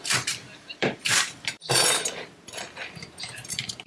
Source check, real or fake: fake